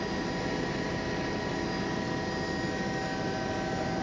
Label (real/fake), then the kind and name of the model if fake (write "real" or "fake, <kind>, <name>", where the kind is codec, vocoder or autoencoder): real